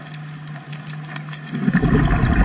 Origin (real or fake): real